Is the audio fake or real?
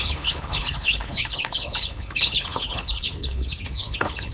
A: fake